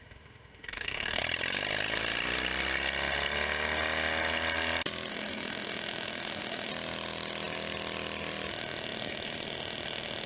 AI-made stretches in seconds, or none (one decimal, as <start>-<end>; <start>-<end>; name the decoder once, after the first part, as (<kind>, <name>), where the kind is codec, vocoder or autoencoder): 0.0-1.2 (autoencoder, DAC-VAE); 5.1-6.7; 8.5-10.3